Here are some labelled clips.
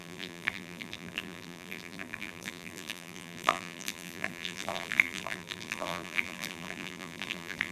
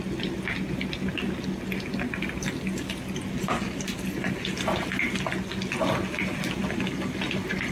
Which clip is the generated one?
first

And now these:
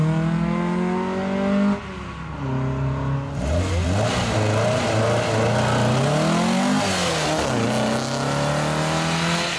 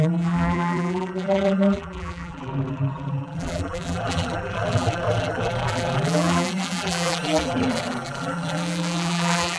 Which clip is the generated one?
second